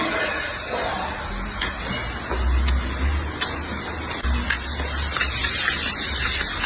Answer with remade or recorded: recorded